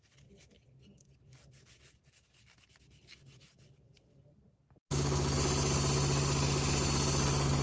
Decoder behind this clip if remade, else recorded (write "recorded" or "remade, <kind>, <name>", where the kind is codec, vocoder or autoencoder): recorded